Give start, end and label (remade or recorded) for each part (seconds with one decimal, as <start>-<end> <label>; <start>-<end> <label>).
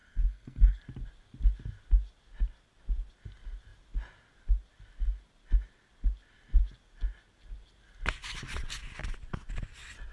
0.0-0.8 remade; 0.8-10.1 recorded